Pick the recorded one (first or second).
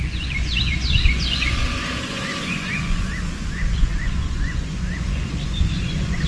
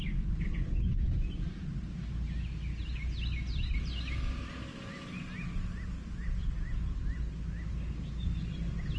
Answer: second